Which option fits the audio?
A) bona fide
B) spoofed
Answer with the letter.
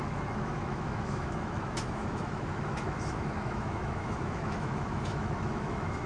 B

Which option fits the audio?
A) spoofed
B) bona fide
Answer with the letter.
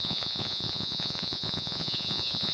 A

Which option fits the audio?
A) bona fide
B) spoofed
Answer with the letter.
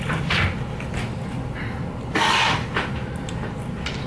A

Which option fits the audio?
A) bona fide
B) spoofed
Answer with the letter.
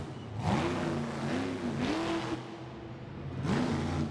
A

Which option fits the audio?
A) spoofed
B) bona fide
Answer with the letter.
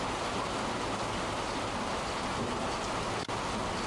B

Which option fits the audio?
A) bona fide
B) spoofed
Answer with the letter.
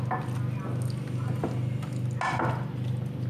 A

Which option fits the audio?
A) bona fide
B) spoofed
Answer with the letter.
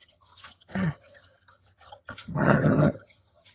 B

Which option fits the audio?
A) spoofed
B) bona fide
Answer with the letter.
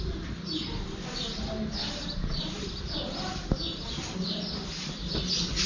B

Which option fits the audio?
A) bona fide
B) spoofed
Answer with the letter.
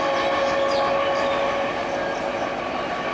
A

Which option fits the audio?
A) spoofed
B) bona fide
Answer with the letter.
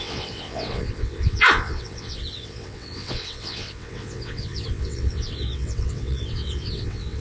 A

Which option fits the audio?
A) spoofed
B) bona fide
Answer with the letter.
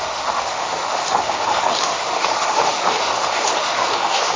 A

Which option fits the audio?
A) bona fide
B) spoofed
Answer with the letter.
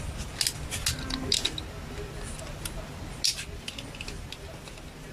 A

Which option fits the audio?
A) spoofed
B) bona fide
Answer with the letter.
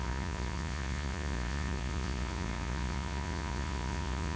A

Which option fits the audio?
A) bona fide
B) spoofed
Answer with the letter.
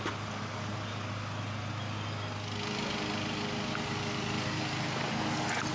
A